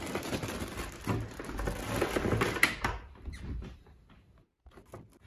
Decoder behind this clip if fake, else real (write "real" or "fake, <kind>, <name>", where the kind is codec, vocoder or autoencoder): real